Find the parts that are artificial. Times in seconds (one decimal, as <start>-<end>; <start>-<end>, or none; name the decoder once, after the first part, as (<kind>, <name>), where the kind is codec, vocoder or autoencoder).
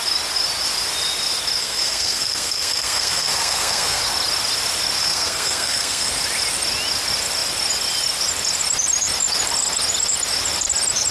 1.6-4.0 (codec, SNAC); 5.0-6.1